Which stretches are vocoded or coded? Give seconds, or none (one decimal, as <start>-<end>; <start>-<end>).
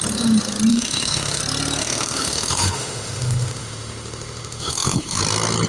0.7-1.4; 1.8-5.2